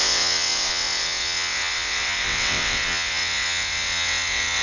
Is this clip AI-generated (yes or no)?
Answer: yes